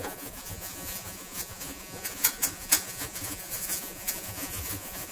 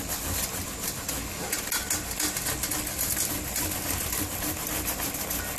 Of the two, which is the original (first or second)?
second